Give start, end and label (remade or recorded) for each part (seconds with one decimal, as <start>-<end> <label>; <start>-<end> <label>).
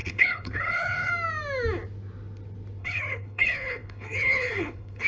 0.0-1.1 remade; 1.1-2.8 recorded; 2.8-5.1 remade